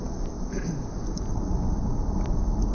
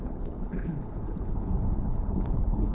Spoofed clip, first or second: second